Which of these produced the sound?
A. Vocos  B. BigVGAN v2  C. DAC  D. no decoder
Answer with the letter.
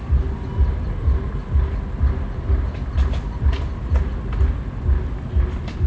D